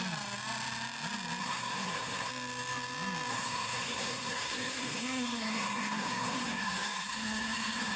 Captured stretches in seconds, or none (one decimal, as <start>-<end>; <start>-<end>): 0.0-1.4; 2.3-3.3